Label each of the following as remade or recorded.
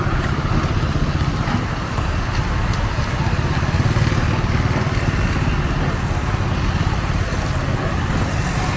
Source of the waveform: recorded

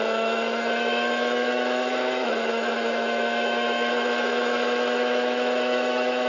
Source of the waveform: remade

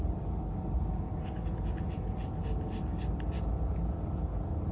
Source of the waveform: recorded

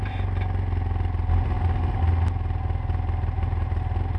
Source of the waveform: recorded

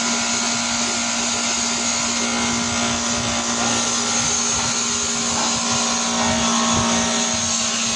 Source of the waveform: recorded